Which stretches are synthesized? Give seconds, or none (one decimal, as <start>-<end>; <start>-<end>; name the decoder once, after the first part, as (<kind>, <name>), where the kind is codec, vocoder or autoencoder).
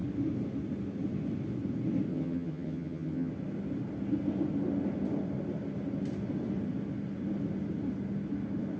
2.1-3.3 (vocoder, HiFi-GAN)